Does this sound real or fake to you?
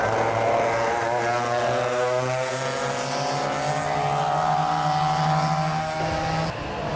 real